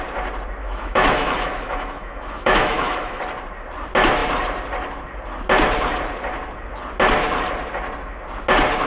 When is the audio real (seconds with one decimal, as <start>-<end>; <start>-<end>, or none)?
0.0-0.6; 3.2-8.9